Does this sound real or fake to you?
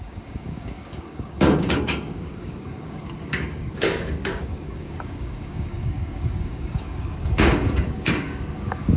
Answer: fake